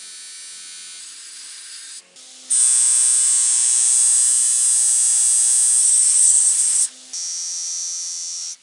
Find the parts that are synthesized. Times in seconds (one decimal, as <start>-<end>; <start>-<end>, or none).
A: 1.0-2.0; 5.8-6.9